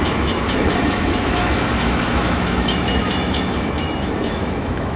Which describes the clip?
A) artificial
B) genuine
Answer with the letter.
A